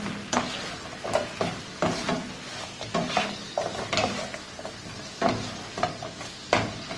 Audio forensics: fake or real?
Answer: real